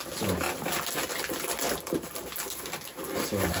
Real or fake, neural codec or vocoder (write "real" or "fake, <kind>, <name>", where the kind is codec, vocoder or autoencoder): real